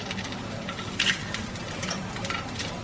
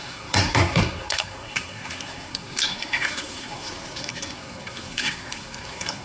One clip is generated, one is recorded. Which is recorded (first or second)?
first